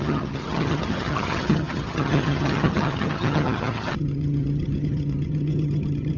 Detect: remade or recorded remade